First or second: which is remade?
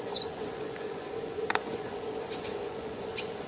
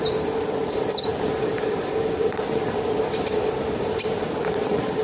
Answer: first